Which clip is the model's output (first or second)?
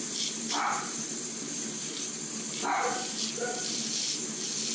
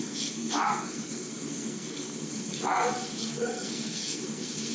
second